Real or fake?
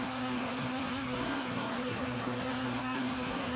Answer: fake